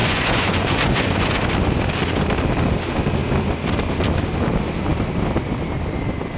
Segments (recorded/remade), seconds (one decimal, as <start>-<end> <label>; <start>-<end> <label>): 0.0-1.5 remade; 1.5-6.4 recorded